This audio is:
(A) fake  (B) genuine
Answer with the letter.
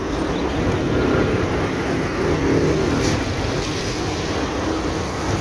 B